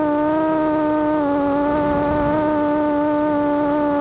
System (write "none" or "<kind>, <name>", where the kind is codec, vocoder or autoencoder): none